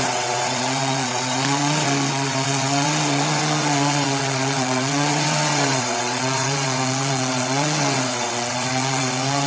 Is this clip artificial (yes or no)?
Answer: yes